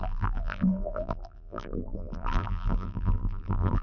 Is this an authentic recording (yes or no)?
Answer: no